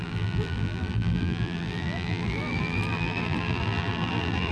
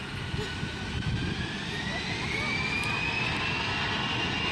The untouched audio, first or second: second